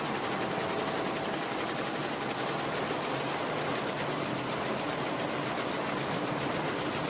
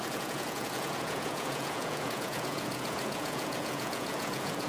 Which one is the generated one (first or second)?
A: second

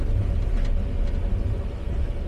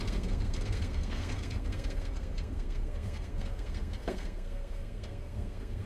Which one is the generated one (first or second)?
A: second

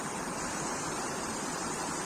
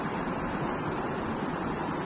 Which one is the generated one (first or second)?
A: first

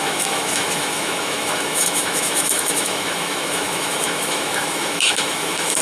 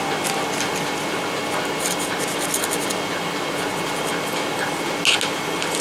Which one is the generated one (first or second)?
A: first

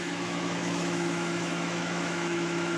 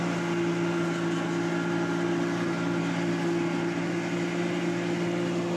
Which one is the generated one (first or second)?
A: first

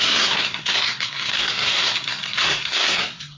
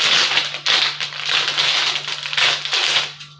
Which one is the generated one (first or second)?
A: first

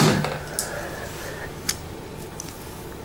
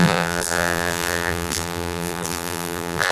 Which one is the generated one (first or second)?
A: second